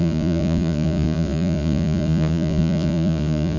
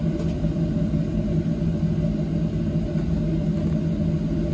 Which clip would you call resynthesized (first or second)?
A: first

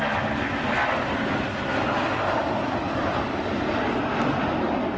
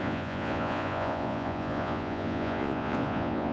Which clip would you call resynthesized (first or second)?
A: second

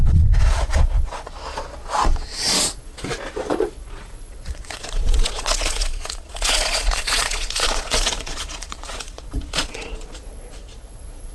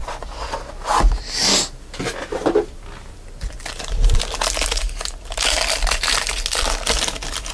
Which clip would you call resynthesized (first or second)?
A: first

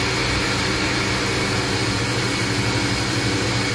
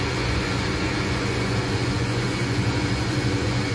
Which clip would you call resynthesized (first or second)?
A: second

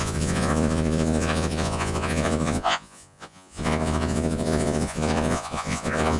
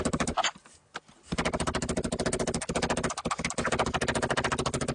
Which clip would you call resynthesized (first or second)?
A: first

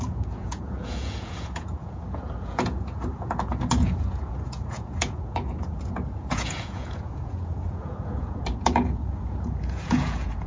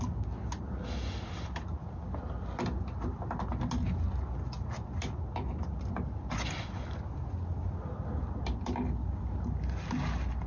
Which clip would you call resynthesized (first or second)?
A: first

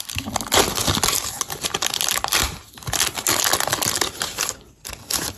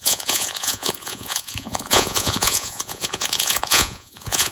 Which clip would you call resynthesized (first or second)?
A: second